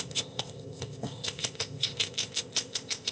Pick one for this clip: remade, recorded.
remade